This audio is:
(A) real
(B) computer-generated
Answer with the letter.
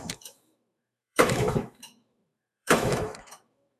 B